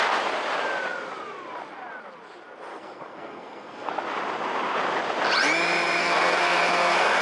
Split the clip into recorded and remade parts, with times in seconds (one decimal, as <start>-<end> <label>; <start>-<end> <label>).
0.0-2.7 recorded; 2.7-3.9 remade; 3.9-6.0 recorded; 6.0-7.2 remade